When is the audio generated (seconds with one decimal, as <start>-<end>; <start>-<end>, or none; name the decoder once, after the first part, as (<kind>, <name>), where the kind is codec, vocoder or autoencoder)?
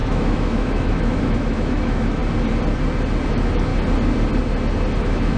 0.0-2.2 (autoencoder, DAC-VAE); 3.3-3.7; 5.0-5.4